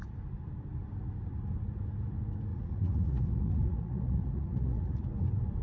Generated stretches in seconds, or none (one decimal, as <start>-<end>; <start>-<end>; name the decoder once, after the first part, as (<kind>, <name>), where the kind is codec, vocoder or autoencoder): 2.5-5.1 (vocoder, Vocos)